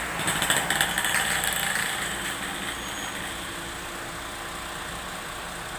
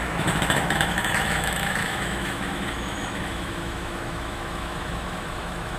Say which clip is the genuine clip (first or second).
first